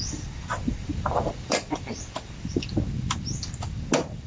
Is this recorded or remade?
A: remade